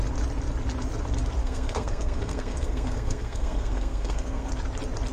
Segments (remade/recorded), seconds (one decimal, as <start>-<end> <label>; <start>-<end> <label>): 0.0-1.4 recorded; 1.4-4.5 remade; 4.5-5.1 recorded